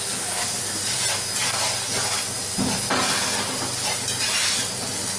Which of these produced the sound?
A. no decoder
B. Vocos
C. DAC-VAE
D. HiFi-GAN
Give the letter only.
A